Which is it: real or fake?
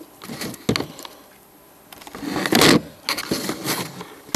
real